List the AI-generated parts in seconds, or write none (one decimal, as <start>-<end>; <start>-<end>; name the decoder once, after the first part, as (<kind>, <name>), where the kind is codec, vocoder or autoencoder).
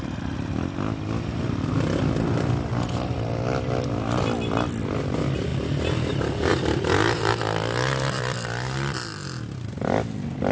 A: 6.5-7.4 (vocoder, BigVGAN v2)